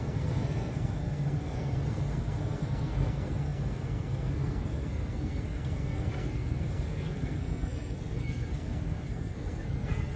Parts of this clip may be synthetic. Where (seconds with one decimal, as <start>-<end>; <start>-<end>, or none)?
0.0-10.2